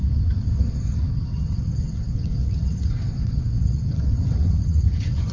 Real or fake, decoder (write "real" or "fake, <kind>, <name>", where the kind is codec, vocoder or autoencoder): fake, vocoder, WaveNeXt